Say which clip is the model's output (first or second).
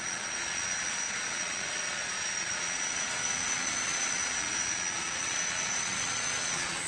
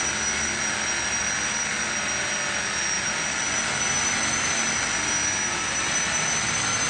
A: first